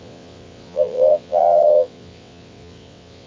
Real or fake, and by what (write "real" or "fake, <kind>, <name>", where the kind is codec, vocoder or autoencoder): fake, vocoder, WaveNeXt